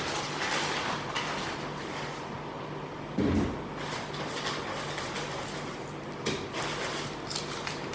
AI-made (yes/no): no